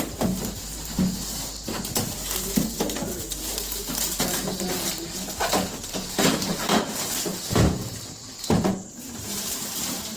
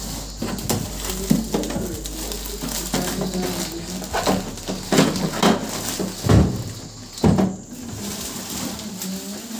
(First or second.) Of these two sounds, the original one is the second